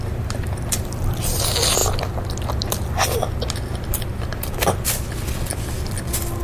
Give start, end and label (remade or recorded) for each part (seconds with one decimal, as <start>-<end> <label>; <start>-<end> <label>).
0.0-6.4 recorded